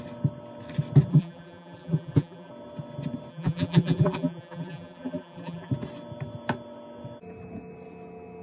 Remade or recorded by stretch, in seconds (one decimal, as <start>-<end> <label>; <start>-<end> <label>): 0.0-1.1 recorded; 1.1-2.5 remade; 2.5-3.3 recorded; 3.3-5.7 remade; 5.7-8.4 recorded